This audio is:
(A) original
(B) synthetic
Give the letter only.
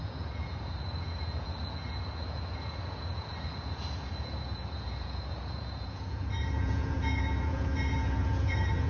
B